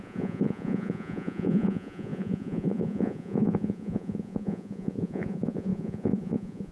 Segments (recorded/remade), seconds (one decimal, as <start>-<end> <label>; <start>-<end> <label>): 0.0-6.7 remade